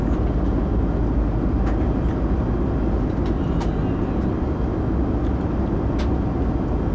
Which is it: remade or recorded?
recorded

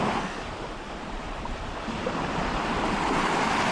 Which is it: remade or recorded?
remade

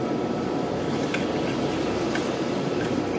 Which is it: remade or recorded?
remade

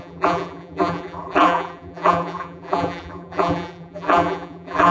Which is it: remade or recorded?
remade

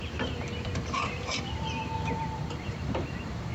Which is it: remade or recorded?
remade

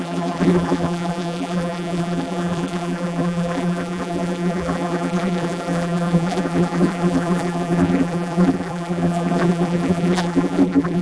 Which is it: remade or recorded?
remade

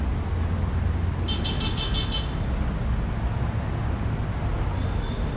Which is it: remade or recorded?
recorded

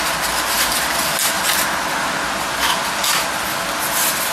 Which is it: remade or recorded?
recorded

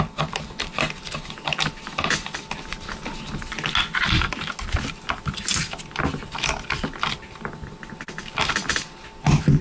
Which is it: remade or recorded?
recorded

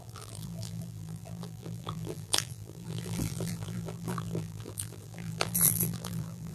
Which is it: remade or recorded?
remade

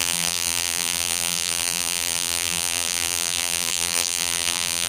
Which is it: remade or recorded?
remade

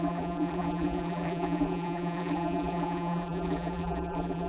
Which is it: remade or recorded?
remade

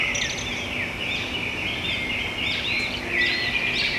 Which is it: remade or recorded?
recorded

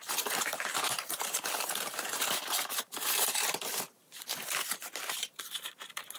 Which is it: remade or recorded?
remade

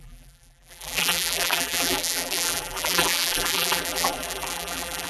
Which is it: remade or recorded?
remade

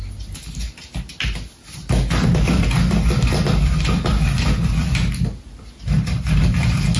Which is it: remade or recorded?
recorded